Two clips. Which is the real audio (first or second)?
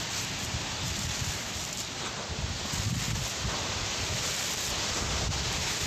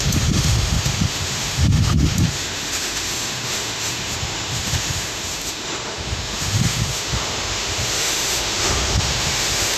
first